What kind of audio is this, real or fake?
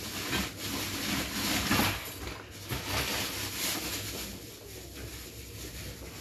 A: real